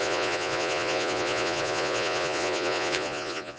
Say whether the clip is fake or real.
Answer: fake